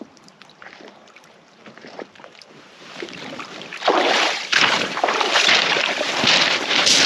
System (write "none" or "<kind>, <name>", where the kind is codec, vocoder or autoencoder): vocoder, BigVGAN v2